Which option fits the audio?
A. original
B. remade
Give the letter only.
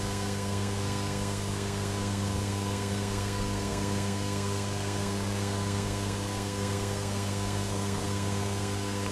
B